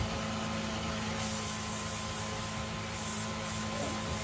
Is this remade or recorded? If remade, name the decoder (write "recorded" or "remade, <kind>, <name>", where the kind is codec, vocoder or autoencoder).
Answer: recorded